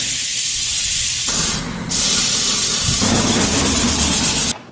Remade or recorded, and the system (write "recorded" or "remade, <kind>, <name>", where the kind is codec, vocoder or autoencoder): recorded